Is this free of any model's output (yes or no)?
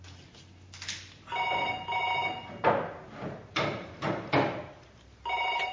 yes